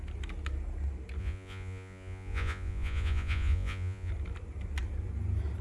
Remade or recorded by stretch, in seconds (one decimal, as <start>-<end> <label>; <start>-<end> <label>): 0.0-1.2 recorded; 1.2-4.1 remade; 4.1-5.6 recorded